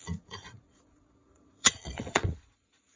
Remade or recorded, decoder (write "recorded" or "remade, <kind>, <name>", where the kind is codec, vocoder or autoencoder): remade, vocoder, Vocos